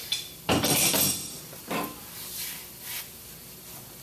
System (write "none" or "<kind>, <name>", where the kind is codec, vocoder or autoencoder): vocoder, BigVGAN v2